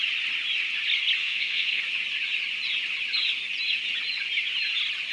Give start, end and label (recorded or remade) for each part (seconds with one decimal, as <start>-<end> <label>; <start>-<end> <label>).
0.0-1.2 recorded; 1.2-1.8 remade; 1.8-5.1 recorded